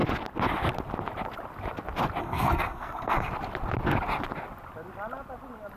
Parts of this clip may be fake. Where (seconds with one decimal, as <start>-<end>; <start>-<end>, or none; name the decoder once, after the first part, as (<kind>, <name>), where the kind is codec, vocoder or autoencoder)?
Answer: 2.2-3.3 (codec, SNAC)